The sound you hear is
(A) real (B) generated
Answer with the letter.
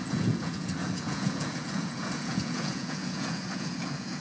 B